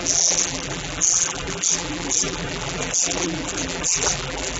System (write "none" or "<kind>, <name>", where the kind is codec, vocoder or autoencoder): vocoder, BigVGAN v2